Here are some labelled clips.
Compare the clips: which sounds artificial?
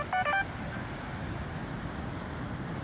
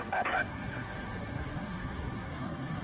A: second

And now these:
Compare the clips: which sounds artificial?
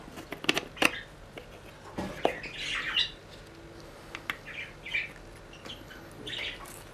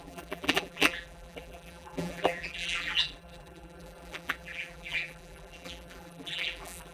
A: second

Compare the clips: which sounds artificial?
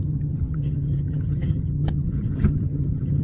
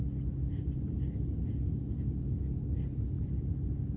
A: first